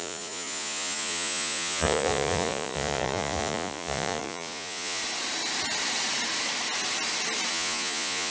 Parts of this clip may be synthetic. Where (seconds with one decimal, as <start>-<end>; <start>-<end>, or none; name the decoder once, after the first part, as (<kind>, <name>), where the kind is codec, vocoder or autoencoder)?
0.0-5.0 (vocoder, Vocos); 7.5-8.3